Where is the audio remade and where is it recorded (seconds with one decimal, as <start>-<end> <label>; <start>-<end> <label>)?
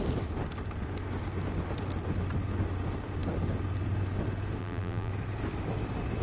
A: 0.0-4.6 recorded; 4.6-5.1 remade; 5.1-6.2 recorded